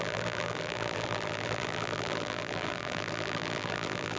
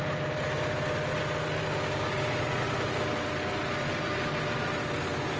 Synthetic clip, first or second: first